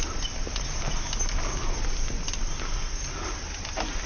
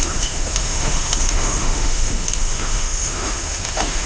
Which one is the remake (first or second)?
second